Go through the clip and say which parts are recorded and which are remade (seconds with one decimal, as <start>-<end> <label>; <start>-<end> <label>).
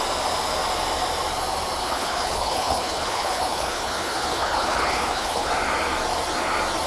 0.0-1.8 recorded; 1.8-5.5 remade; 5.5-6.9 recorded